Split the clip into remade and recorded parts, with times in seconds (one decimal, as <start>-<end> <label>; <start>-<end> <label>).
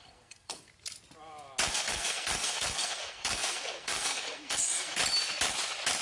0.0-0.7 remade; 0.7-1.7 recorded; 1.7-5.0 remade; 5.0-6.0 recorded